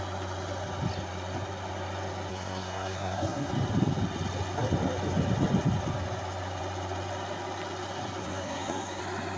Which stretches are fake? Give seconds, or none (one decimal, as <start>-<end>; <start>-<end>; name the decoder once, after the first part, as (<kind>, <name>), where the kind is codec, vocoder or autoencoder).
2.3-3.5 (codec, SNAC); 8.2-9.0